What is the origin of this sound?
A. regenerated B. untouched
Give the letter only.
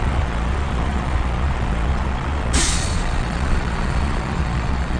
A